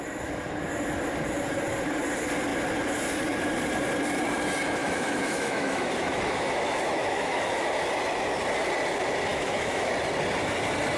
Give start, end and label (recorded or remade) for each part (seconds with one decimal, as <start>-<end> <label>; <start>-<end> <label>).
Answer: 0.0-4.8 recorded; 4.8-7.7 remade; 7.7-9.3 recorded; 9.3-9.9 remade; 9.9-11.0 recorded